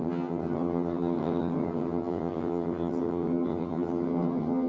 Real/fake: fake